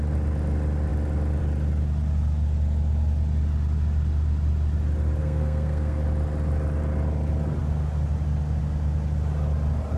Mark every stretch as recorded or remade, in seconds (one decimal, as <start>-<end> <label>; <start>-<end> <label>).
0.0-5.2 recorded; 5.2-6.0 remade; 6.0-10.0 recorded